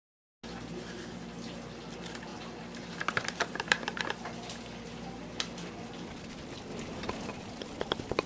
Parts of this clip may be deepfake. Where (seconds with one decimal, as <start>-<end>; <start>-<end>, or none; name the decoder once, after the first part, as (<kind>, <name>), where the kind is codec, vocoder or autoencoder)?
2.3-4.0 (vocoder, BigVGAN v2)